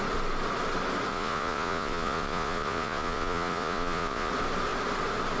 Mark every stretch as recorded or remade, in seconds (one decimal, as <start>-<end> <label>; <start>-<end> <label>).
0.0-1.1 recorded; 1.1-4.3 remade; 4.3-5.4 recorded

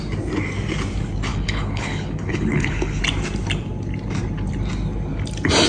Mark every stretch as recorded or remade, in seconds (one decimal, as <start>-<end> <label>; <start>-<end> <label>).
0.0-1.3 recorded; 1.3-3.0 remade; 3.0-5.7 recorded

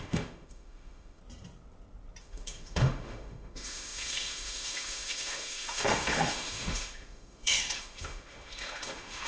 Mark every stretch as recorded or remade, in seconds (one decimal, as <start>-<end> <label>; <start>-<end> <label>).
0.0-1.2 remade; 1.2-2.2 recorded; 2.2-9.3 remade

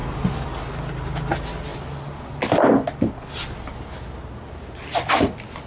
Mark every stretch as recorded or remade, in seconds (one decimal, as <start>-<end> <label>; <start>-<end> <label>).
0.0-0.6 remade; 0.6-5.7 recorded

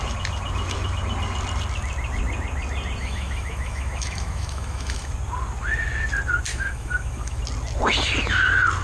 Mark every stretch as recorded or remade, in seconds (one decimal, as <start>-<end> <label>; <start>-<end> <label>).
0.0-3.0 recorded; 3.0-5.1 remade; 5.1-6.5 recorded; 6.5-7.4 remade; 7.4-8.8 recorded

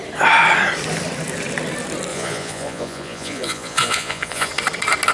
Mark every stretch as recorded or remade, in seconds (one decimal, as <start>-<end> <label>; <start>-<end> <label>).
0.0-2.1 recorded; 2.1-4.5 remade; 4.5-5.1 recorded